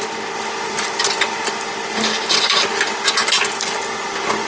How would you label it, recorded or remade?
recorded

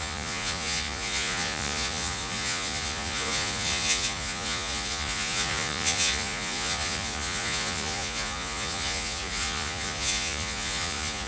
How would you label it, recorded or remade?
remade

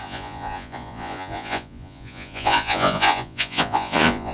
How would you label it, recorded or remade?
remade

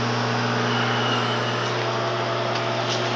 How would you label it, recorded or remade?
recorded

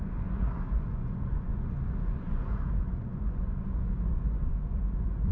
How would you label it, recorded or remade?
remade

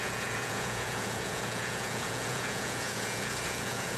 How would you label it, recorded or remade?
remade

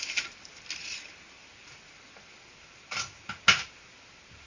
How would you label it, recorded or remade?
recorded